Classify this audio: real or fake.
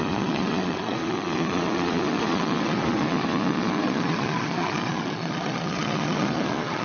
fake